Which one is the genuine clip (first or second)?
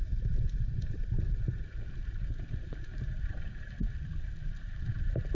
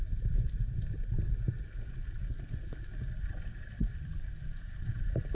second